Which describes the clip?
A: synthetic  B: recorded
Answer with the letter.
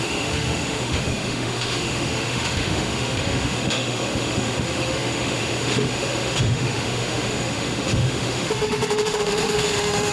A